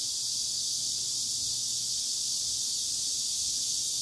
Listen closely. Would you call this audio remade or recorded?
recorded